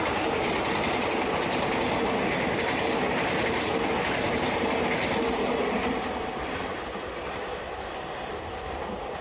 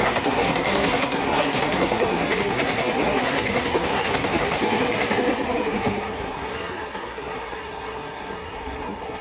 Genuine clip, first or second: first